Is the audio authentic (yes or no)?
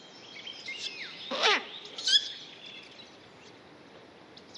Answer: yes